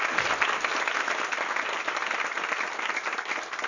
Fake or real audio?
real